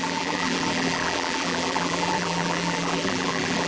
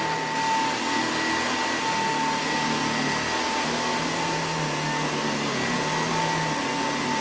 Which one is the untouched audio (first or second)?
second